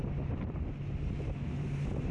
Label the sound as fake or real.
real